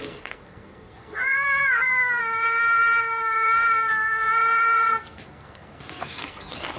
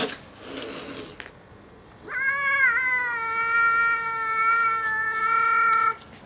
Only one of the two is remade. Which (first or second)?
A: first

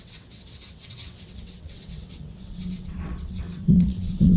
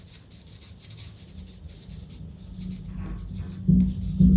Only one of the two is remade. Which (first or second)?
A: first